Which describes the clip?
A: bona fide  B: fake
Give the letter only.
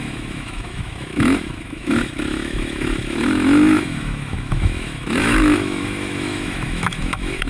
B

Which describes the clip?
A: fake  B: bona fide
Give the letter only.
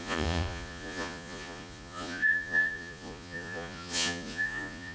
A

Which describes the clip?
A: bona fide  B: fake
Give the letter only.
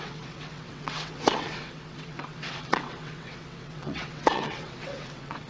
B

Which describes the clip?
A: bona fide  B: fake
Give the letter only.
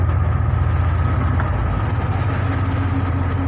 A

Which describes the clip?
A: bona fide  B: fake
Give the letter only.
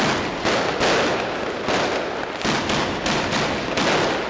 A